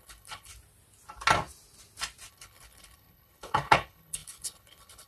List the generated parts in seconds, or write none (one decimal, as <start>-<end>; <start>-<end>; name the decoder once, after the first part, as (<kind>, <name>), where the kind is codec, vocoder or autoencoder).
0.0-0.5 (codec, HILCodec); 2.3-5.1

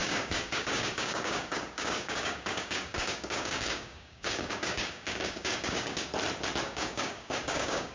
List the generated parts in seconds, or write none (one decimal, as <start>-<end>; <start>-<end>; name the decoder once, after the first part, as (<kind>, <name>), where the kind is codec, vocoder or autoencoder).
0.0-6.1 (codec, DAC); 6.6-7.9

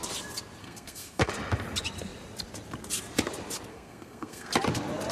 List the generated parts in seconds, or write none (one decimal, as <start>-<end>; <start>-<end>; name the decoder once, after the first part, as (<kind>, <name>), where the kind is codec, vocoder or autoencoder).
0.6-1.3 (codec, SNAC); 3.7-4.5

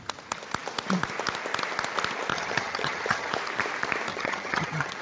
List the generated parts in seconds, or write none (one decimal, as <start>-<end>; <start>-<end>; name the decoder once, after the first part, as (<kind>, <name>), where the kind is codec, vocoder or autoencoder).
2.3-3.3 (vocoder, HiFi-GAN); 4.1-5.0